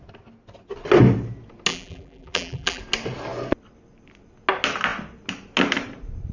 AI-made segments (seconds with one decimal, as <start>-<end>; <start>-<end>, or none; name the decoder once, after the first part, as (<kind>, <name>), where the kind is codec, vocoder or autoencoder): 1.7-2.8 (vocoder, BigVGAN v2)